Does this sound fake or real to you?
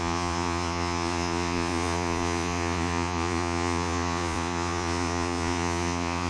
fake